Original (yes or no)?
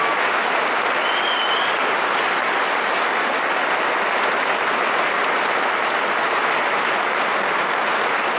yes